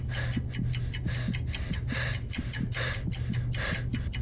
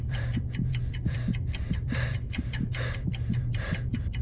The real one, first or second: first